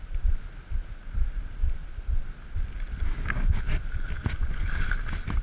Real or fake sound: real